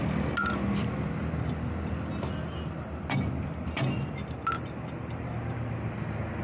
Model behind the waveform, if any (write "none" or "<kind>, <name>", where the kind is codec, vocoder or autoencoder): none